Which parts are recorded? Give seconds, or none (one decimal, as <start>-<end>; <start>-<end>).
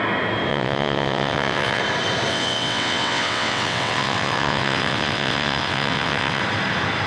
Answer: 0.0-0.5; 1.8-2.3; 6.4-7.1